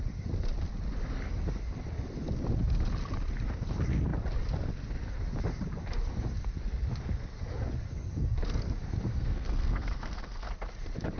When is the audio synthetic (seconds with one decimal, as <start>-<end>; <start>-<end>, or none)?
9.1-10.5